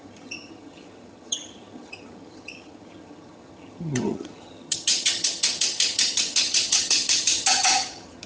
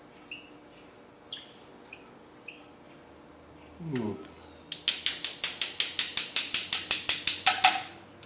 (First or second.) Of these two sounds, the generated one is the first